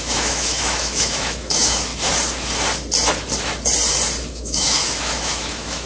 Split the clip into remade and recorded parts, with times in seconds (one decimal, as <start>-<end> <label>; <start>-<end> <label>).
0.0-1.9 remade; 1.9-4.3 recorded; 4.3-5.9 remade